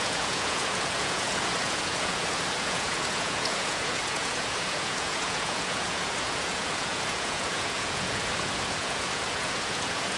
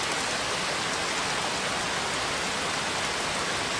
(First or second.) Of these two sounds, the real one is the second